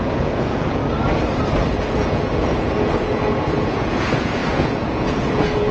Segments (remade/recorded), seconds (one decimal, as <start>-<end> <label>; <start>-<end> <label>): 0.0-0.8 remade; 0.8-1.7 recorded; 1.7-5.7 remade